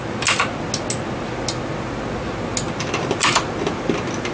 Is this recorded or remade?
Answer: recorded